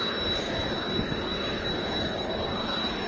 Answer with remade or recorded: recorded